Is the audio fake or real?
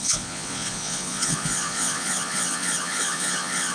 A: fake